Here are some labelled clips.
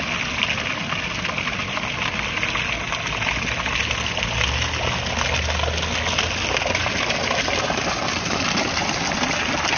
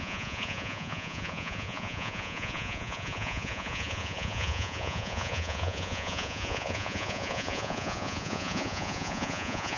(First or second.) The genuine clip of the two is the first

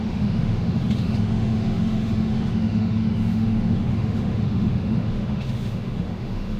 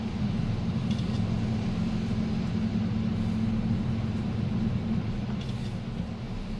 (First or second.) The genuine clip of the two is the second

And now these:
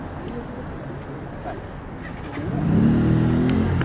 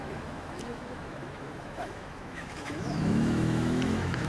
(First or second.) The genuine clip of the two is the first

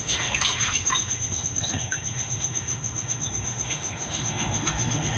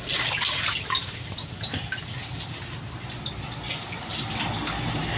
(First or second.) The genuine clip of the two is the second